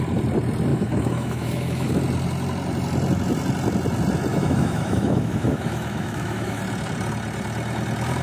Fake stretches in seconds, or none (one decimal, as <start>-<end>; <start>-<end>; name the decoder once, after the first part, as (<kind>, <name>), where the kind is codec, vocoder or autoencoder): 0.7-1.9 (autoencoder, DAC-VAE); 4.3-6.6